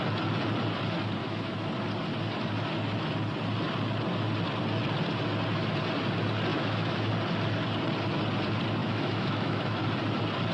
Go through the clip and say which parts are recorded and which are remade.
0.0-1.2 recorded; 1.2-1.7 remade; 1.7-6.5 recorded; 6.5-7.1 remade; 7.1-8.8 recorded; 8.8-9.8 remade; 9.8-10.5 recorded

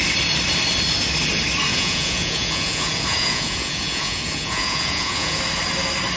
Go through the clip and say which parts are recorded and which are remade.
0.0-1.7 recorded; 1.7-5.4 remade; 5.4-6.2 recorded

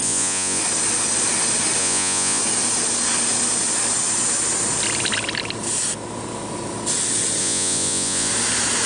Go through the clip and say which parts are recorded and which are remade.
0.0-0.6 remade; 0.6-1.8 recorded; 1.8-2.4 remade; 2.4-7.4 recorded; 7.4-8.3 remade; 8.3-8.9 recorded

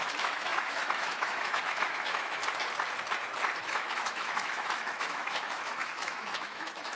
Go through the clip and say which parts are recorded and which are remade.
0.0-2.4 remade; 2.4-3.6 recorded; 3.6-7.0 remade

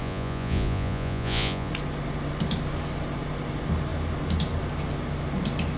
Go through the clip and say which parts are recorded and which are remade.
0.0-1.7 remade; 1.7-5.8 recorded